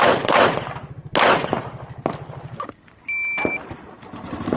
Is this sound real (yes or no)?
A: yes